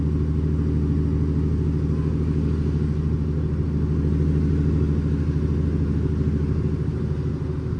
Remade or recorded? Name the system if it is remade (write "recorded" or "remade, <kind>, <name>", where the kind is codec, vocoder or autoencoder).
recorded